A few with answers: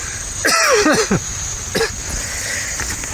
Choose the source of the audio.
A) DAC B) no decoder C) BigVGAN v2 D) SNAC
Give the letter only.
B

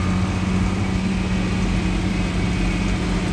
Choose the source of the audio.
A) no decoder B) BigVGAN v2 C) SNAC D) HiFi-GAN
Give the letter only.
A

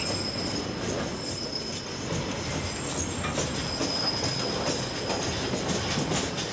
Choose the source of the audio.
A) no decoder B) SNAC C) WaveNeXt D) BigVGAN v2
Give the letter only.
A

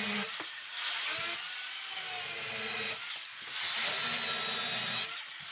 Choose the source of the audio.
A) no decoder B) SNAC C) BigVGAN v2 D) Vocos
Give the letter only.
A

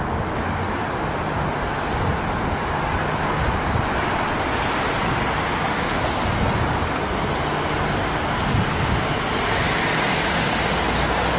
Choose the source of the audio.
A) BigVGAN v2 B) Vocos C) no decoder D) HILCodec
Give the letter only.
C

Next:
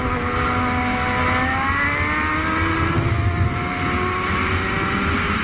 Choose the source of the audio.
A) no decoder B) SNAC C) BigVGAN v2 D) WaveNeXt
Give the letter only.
A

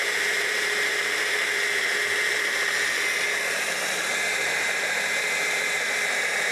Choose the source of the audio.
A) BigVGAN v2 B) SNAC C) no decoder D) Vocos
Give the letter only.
A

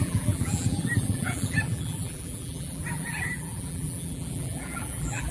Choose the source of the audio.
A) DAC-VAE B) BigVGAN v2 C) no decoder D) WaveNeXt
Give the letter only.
B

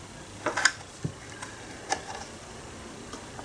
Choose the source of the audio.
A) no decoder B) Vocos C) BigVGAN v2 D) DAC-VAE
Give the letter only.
A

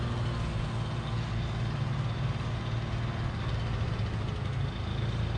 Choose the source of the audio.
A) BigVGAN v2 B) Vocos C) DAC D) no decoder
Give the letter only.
D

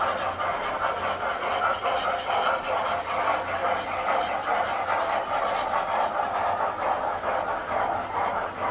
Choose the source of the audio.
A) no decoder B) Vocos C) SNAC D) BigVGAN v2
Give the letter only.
A